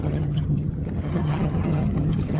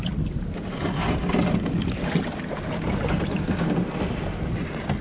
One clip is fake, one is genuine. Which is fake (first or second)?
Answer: first